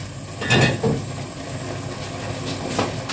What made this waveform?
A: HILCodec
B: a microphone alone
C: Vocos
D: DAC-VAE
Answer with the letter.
B